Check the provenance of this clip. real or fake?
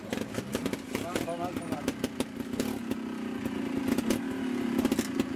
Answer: real